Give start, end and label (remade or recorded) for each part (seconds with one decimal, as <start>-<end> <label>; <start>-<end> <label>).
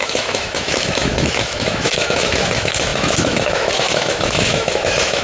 0.0-5.2 remade